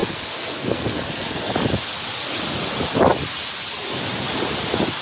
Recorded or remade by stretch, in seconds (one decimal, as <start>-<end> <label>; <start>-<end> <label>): 0.0-1.5 remade; 1.5-5.0 recorded